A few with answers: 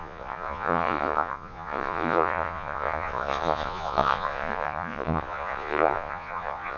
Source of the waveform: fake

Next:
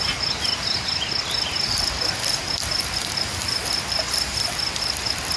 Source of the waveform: real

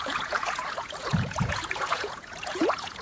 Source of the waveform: fake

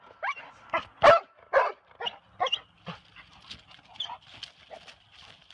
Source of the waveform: real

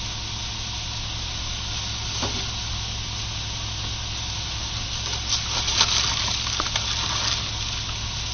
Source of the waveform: real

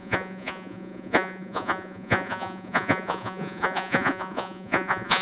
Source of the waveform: fake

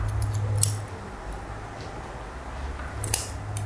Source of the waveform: real